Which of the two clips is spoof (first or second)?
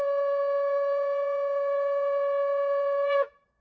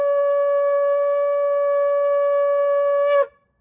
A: first